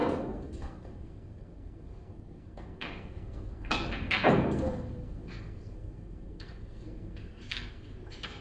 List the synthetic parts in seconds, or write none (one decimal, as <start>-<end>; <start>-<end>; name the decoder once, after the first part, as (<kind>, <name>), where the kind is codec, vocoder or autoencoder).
0.0-8.4 (codec, SNAC)